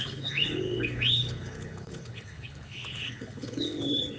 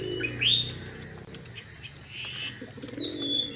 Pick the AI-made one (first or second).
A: first